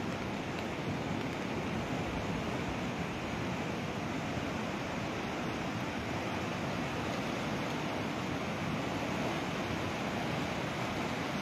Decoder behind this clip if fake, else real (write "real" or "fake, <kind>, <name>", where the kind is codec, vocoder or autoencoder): real